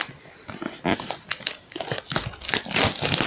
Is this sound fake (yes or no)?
no